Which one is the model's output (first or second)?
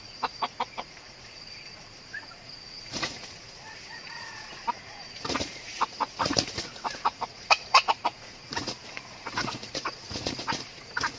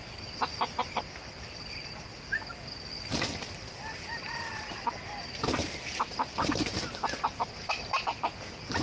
first